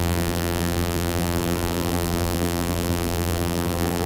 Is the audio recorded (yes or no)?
no